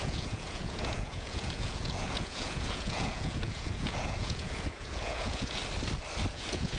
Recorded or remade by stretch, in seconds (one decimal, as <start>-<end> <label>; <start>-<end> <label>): 0.0-5.6 remade; 5.6-6.3 recorded; 6.3-6.8 remade